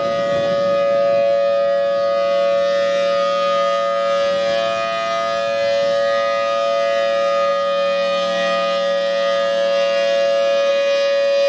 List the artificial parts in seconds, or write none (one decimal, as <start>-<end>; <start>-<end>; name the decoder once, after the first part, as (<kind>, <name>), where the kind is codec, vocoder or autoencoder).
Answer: none